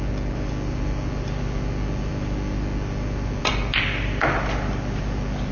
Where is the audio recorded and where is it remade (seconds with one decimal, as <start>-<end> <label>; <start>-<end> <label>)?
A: 0.0-5.5 recorded